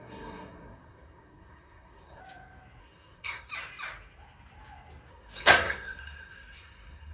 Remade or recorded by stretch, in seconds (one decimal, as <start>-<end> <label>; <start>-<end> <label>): 0.0-2.2 remade; 2.2-2.8 recorded; 2.8-3.5 remade; 3.5-5.1 recorded; 5.1-7.1 remade